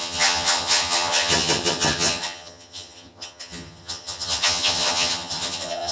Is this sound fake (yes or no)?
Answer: yes